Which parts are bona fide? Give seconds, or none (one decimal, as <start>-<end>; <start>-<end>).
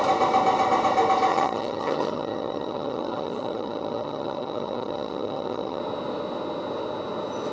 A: 0.0-1.3; 5.8-7.5